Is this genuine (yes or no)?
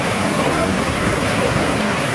no